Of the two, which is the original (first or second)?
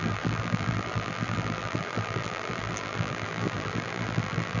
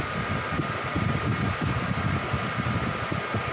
second